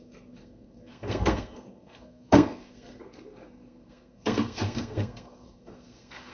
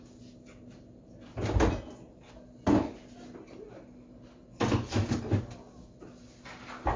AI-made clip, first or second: first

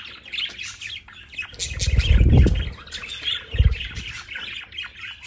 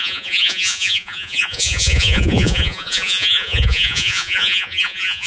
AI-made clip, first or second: second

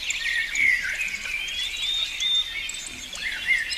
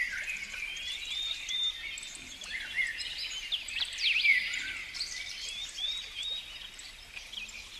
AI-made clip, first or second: second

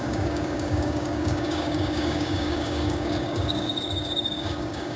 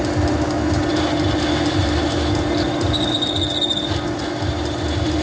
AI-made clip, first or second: first